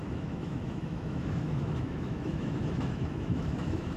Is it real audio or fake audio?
fake